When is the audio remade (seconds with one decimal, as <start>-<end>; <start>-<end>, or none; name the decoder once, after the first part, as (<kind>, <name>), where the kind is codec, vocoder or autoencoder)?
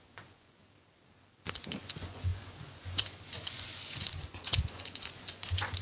0.0-0.6 (vocoder, Vocos); 1.8-5.8